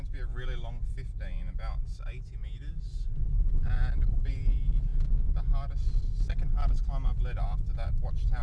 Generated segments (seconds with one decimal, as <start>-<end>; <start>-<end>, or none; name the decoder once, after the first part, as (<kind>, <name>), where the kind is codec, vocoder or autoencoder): none